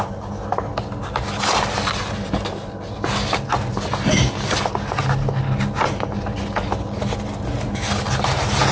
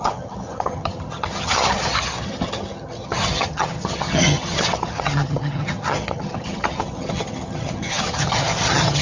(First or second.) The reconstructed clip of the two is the second